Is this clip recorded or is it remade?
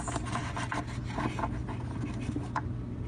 recorded